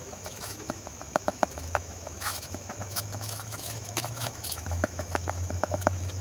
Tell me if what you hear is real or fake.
fake